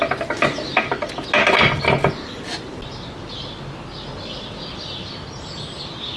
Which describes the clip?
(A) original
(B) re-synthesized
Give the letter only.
A